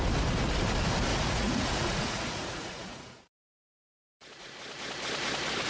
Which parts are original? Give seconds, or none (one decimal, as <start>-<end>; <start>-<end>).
0.0-1.1; 4.5-5.7